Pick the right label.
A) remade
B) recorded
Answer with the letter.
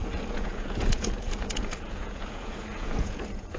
A